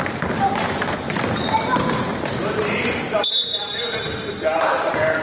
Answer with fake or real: fake